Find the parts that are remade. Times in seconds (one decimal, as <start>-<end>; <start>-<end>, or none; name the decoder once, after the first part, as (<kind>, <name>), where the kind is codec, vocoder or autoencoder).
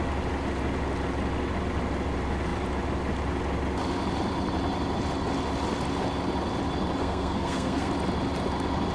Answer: 7.0-7.9 (codec, SNAC)